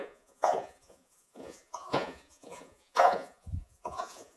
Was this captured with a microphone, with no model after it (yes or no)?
no